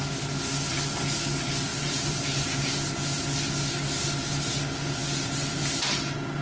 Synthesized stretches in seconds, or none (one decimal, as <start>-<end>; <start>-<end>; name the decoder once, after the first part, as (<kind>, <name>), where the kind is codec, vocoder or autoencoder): 1.7-2.7 (vocoder, BigVGAN v2)